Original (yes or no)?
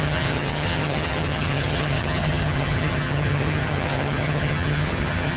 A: no